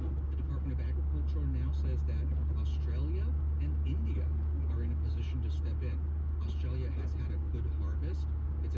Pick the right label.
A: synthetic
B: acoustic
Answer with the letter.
B